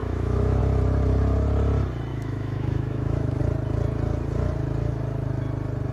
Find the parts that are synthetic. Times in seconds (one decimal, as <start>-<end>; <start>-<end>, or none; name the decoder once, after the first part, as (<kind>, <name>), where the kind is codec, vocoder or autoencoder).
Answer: 0.0-0.6 (autoencoder, DAC-VAE); 2.1-3.4